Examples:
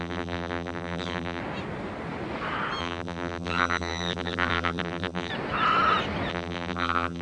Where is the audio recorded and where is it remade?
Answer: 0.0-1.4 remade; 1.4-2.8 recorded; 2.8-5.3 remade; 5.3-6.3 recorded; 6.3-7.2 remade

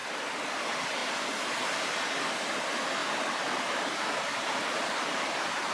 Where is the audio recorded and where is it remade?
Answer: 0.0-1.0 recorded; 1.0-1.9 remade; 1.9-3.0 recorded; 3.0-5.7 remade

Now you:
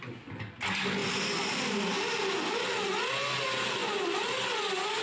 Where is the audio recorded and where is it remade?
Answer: 0.0-5.0 recorded

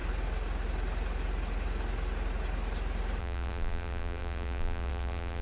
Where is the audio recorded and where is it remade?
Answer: 0.0-3.2 recorded; 3.2-5.4 remade

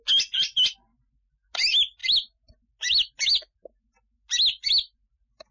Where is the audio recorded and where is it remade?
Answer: 0.0-5.5 recorded

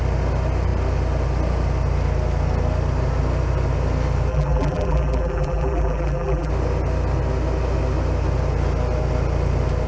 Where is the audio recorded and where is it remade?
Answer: 0.0-4.3 recorded; 4.3-6.5 remade; 6.5-9.9 recorded

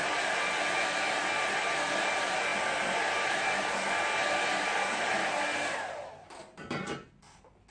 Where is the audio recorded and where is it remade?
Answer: 0.0-7.7 recorded